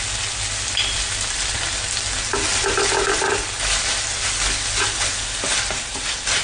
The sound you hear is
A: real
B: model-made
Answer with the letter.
A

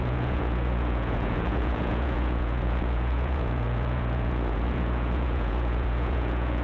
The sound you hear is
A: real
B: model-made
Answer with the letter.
B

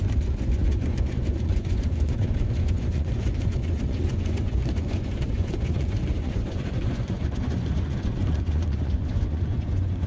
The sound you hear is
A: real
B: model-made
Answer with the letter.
B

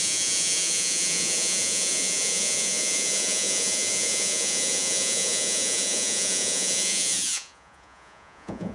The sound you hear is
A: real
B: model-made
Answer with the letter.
B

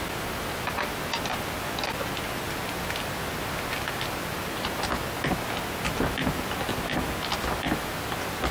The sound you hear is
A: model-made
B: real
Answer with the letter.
B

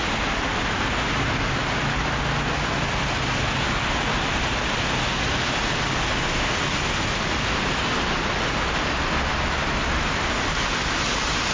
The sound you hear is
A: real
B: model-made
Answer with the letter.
A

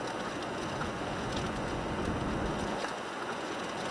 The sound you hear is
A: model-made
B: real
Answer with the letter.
A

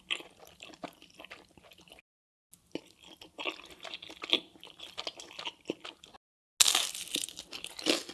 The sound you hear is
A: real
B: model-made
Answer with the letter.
A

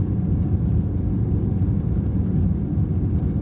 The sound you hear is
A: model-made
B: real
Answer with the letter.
B